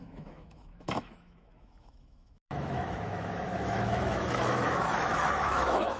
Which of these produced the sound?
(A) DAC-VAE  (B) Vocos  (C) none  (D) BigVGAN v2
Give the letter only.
A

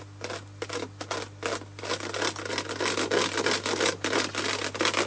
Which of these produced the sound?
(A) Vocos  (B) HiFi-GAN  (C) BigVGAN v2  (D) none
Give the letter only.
D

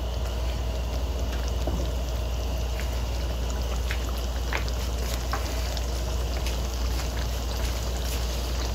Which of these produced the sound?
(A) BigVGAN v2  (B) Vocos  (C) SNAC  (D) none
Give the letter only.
D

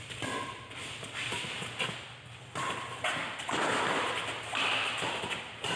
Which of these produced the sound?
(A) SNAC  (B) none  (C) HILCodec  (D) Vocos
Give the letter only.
B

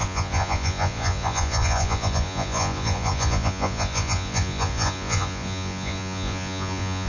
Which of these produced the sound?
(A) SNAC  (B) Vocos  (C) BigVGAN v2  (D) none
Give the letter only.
B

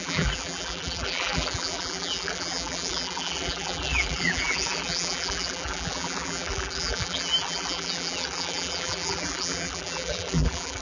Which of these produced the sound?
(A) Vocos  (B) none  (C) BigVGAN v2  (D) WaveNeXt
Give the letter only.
C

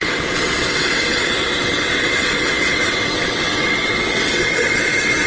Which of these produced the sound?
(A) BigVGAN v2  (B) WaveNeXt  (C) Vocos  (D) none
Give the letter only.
B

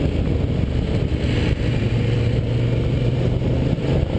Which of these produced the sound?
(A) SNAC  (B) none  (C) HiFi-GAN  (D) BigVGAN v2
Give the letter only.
B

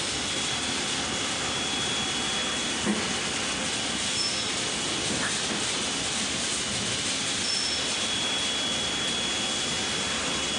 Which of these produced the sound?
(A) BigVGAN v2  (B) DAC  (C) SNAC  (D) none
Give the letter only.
D